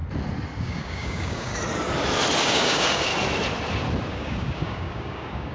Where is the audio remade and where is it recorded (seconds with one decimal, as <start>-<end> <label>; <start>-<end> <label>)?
0.0-0.6 recorded; 0.6-1.5 remade; 1.5-2.4 recorded; 2.4-3.1 remade; 3.1-4.1 recorded; 4.1-5.5 remade